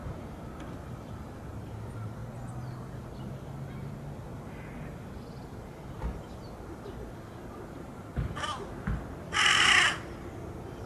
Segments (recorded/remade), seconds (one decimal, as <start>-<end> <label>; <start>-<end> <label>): 0.0-2.2 remade; 2.2-4.5 recorded; 4.5-10.9 remade